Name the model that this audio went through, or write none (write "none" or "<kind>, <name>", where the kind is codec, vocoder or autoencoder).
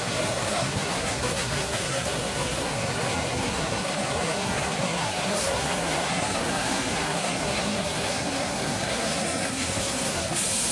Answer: codec, SNAC